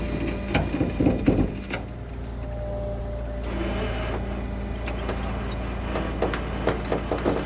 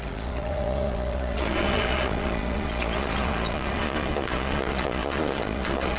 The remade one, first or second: second